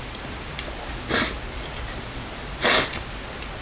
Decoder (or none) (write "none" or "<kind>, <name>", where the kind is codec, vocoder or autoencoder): none